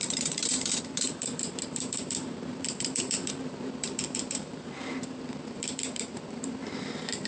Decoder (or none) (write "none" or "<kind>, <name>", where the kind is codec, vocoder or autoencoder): vocoder, BigVGAN v2